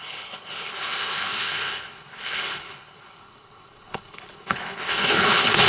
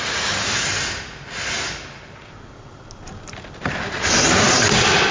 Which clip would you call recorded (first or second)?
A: second